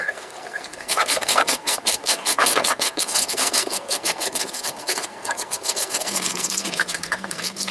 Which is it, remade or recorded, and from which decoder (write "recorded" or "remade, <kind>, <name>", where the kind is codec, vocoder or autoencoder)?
remade, codec, SNAC